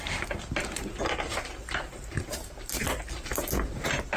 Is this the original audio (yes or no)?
yes